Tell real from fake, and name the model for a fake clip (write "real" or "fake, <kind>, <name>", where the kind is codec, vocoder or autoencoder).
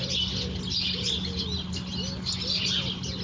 real